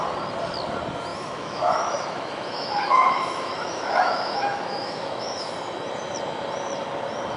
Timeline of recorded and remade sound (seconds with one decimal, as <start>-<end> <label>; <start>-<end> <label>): 0.0-1.1 recorded; 1.1-5.5 remade; 5.5-7.4 recorded